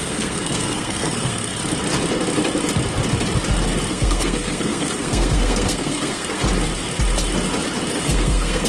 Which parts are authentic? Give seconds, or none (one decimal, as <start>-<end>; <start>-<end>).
1.5-3.9; 6.4-7.9